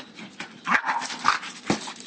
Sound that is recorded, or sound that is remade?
recorded